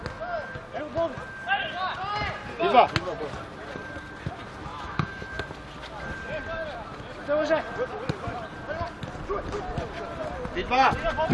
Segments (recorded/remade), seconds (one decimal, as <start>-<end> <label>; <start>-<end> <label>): 0.0-4.7 recorded; 4.7-5.5 remade; 5.5-11.3 recorded